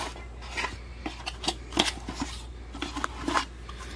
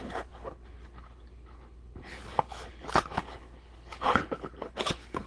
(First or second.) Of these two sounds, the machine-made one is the second